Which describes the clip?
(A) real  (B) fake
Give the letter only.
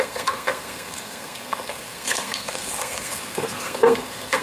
B